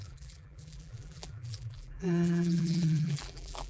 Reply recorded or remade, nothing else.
remade